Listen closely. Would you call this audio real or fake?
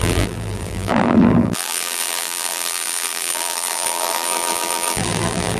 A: fake